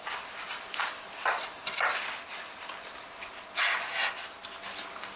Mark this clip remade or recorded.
recorded